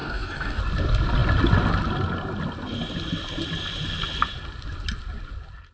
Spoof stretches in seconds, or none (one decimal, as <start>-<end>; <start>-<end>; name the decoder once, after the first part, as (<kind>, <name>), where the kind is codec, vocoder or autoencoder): 0.0-0.6 (codec, DAC)